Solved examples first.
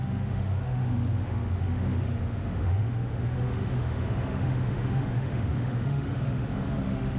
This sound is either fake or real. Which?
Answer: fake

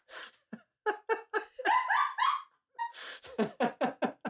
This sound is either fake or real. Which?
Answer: real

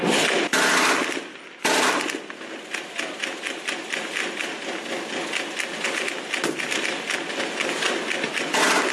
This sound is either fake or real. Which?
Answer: real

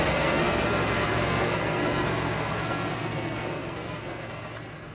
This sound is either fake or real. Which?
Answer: fake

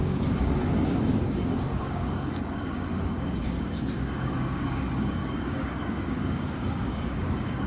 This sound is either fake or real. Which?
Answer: fake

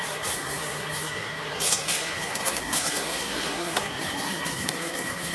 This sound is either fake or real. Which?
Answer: fake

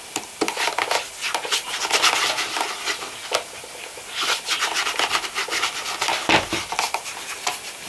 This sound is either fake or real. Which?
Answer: real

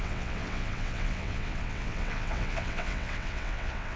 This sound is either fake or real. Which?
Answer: fake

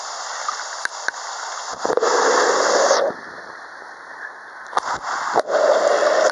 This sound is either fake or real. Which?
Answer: real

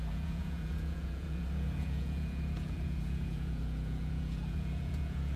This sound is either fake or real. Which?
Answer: fake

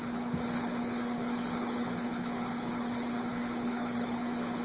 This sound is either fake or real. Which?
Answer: fake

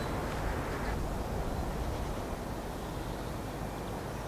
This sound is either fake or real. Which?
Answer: real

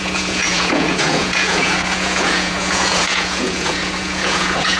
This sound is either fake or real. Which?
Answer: fake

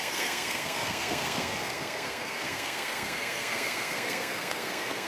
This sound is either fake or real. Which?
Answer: fake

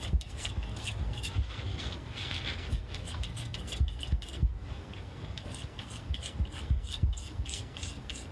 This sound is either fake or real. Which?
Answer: fake